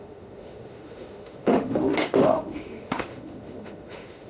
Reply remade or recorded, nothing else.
remade